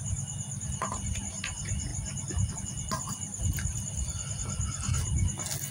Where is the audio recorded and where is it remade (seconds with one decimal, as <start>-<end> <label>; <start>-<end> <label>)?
0.0-5.7 recorded